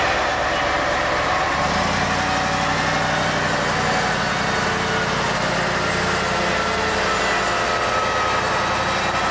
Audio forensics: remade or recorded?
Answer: recorded